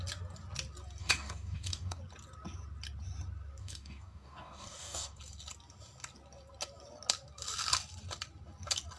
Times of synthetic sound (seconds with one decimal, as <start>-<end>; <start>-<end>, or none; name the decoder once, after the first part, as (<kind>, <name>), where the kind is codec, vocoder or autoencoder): 1.0-2.0 (codec, DAC); 3.6-5.2